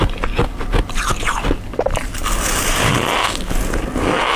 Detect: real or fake real